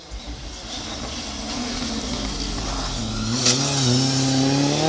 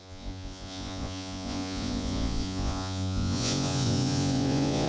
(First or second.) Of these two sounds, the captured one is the first